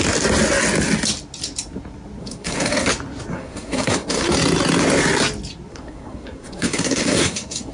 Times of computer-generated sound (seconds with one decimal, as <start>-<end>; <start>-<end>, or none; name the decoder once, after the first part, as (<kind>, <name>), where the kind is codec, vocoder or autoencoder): 2.2-2.9 (codec, SNAC); 3.3-4.3; 5.7-7.7